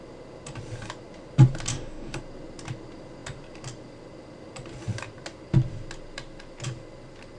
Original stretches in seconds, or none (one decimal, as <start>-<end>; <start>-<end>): 0.0-1.7; 2.2-7.4